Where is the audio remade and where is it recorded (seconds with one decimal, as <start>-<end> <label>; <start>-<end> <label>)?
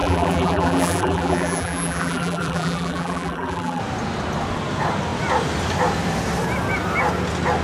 0.0-3.8 remade; 3.8-7.6 recorded